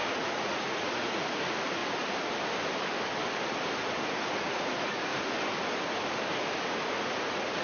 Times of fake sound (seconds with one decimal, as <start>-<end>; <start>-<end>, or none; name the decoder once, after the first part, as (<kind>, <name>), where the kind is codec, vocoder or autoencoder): 0.0-1.8 (vocoder, Vocos); 4.3-5.1; 6.9-7.6